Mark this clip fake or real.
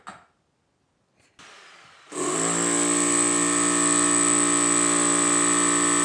real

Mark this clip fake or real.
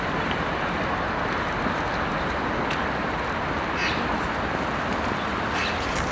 real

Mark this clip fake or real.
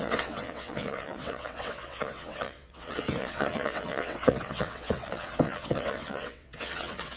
fake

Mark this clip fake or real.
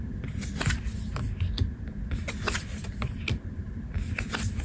real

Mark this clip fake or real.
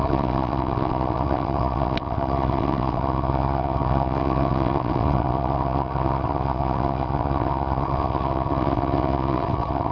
fake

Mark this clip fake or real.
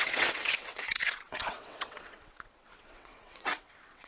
fake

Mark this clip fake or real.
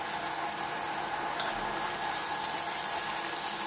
real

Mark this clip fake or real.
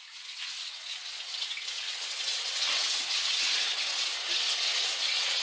fake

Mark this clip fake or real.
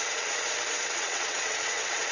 fake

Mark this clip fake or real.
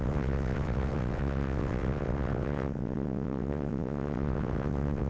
fake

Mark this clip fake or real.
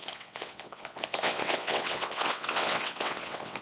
fake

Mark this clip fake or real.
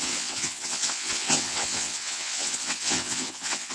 fake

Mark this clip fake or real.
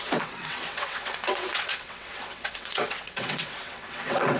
fake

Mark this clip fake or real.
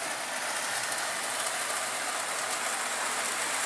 real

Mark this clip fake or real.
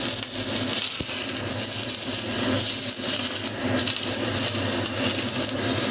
real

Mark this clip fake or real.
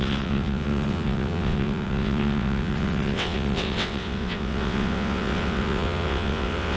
fake